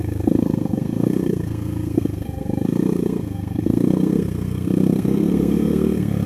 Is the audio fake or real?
fake